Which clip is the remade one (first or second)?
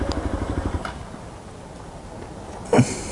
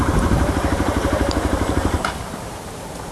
second